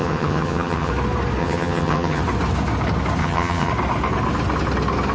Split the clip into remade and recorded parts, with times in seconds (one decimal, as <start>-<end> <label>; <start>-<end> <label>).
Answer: 0.0-0.9 remade; 0.9-1.4 recorded; 1.4-2.2 remade; 2.2-3.2 recorded; 3.2-3.7 remade; 3.7-5.1 recorded